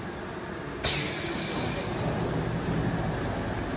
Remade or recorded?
recorded